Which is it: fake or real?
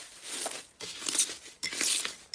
real